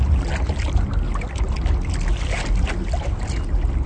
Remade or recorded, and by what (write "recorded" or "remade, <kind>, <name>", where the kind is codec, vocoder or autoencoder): recorded